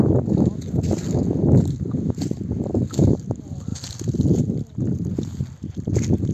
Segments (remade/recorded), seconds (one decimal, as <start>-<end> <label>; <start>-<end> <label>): 0.0-6.3 recorded